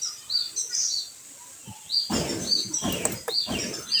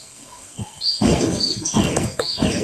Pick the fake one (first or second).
second